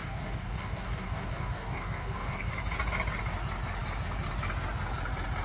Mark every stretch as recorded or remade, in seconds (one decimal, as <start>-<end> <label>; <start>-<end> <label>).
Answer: 0.0-2.5 remade; 2.5-5.4 recorded